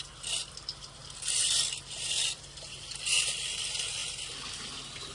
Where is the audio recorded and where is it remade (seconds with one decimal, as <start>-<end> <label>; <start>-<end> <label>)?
0.0-5.1 recorded